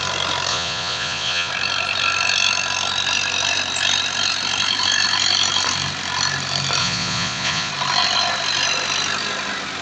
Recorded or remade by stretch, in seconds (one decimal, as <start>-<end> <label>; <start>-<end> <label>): 0.0-0.5 recorded; 0.5-1.5 remade; 1.5-6.8 recorded; 6.8-7.7 remade; 7.7-9.8 recorded